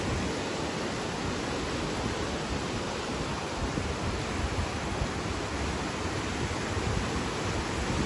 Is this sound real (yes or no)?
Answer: yes